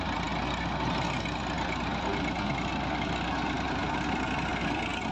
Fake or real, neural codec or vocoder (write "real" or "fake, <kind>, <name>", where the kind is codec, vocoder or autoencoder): real